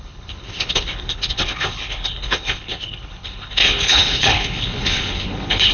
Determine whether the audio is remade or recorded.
remade